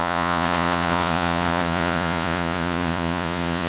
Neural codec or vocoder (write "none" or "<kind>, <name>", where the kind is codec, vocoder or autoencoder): vocoder, Vocos